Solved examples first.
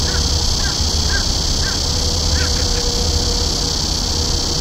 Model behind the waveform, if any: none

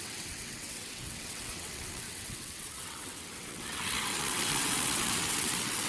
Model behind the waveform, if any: vocoder, WaveNeXt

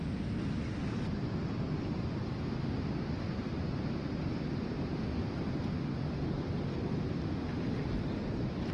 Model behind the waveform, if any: none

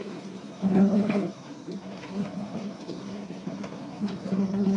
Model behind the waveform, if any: codec, SNAC